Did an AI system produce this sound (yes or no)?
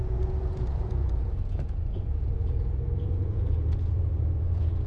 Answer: yes